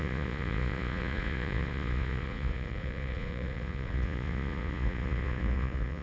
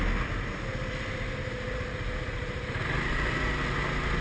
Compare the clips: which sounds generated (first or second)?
first